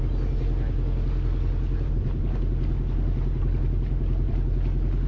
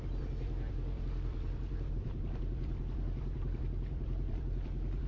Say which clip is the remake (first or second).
second